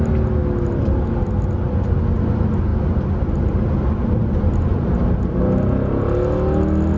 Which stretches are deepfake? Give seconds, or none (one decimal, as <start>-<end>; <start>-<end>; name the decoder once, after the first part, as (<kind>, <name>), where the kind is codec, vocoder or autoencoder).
4.7-5.4 (vocoder, BigVGAN v2)

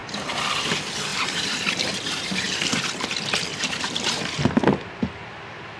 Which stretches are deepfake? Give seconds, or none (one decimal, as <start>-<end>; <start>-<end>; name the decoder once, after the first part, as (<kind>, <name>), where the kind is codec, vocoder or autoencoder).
0.0-0.7 (vocoder, BigVGAN v2); 1.1-2.8; 3.5-4.2

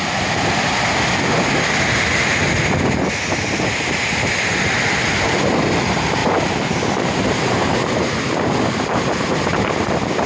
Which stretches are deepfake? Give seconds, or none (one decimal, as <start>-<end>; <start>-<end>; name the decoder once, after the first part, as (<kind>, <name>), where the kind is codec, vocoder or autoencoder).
6.2-9.4 (vocoder, BigVGAN v2)

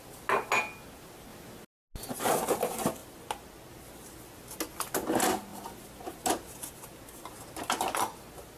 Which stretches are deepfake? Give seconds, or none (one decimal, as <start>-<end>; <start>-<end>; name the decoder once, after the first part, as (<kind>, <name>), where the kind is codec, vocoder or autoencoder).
none

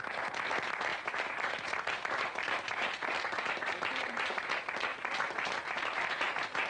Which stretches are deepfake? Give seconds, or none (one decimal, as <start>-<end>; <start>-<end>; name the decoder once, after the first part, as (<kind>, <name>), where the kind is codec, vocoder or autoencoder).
0.9-4.5 (vocoder, BigVGAN v2); 4.9-6.7

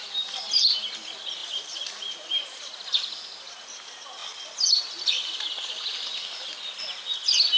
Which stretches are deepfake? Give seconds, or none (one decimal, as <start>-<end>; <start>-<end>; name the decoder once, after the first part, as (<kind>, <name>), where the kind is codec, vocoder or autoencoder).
none

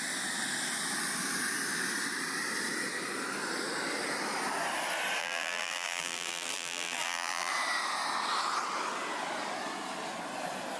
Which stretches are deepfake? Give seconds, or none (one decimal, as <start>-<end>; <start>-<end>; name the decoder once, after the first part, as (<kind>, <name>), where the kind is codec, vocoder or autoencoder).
5.2-7.5 (vocoder, BigVGAN v2)

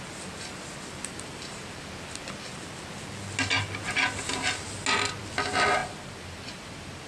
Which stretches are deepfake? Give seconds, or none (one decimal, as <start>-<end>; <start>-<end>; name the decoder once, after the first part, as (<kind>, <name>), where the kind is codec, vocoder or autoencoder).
1.1-1.9 (vocoder, BigVGAN v2); 5.8-7.1